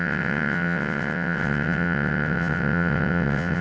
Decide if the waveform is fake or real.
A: fake